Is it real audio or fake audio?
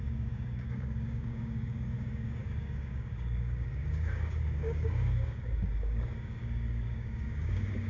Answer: fake